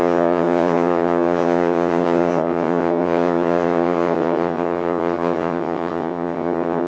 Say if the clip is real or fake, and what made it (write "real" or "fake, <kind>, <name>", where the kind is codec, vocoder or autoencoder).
fake, vocoder, HiFi-GAN